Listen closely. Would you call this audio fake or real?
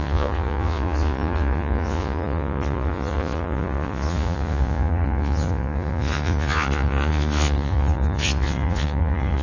fake